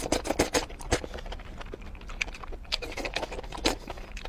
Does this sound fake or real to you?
real